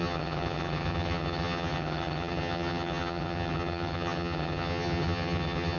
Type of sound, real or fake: fake